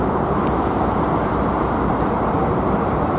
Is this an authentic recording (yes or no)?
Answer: yes